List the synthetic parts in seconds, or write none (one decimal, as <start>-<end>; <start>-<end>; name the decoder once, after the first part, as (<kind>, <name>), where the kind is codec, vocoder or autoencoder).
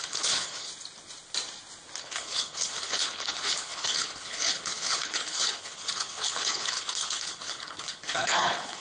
0.0-0.7 (codec, HILCodec); 2.0-8.8